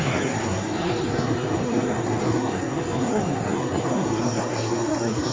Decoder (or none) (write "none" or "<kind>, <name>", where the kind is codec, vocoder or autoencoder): codec, SNAC